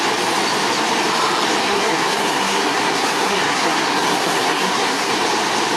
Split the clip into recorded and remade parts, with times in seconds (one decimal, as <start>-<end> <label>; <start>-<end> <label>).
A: 0.0-1.6 recorded; 1.6-5.1 remade; 5.1-5.8 recorded